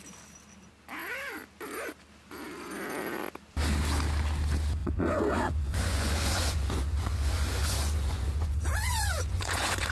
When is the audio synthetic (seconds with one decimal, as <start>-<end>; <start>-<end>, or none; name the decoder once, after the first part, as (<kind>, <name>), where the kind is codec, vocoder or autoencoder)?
4.8-9.9 (vocoder, Vocos)